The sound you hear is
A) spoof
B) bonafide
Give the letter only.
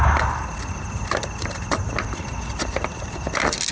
B